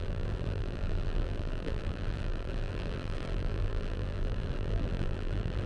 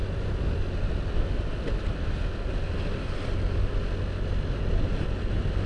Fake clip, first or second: first